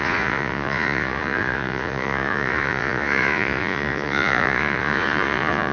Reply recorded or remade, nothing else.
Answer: remade